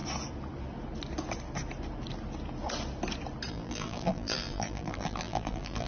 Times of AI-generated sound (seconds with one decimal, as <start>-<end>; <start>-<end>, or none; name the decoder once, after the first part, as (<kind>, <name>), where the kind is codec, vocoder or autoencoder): 3.5-5.9 (vocoder, BigVGAN v2)